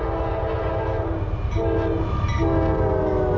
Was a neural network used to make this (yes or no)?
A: no